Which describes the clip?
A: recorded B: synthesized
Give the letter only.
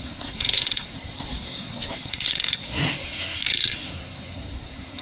B